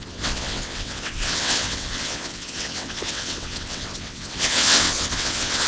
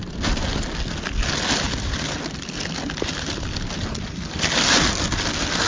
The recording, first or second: second